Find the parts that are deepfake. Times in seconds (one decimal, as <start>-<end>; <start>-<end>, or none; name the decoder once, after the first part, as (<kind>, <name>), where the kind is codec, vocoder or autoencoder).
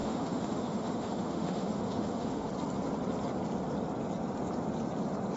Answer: 0.0-2.5 (autoencoder, DAC-VAE)